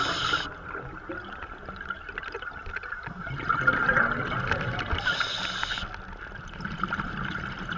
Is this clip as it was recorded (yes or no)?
yes